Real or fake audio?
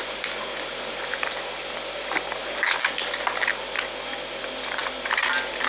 real